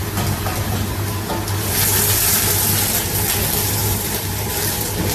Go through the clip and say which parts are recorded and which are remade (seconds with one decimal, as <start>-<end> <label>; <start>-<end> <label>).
0.0-3.8 recorded; 3.8-4.6 remade; 4.6-5.1 recorded